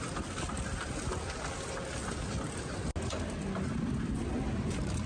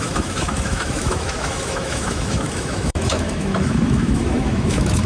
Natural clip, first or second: first